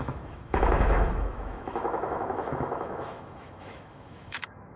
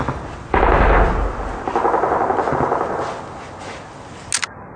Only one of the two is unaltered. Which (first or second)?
second